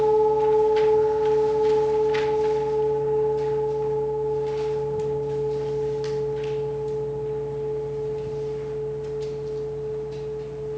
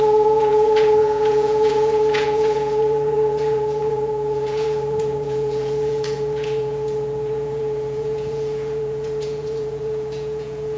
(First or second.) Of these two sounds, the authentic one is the first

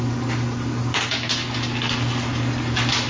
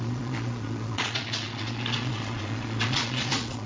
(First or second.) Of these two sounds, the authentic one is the first